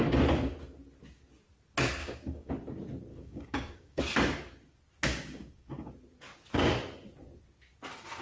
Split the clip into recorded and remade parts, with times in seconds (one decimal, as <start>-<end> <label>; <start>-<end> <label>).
0.0-2.0 recorded; 2.0-2.5 remade; 2.5-3.1 recorded; 3.1-4.0 remade; 4.0-5.1 recorded; 5.1-5.9 remade; 5.9-8.2 recorded